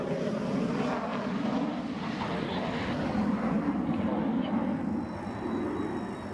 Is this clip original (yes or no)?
yes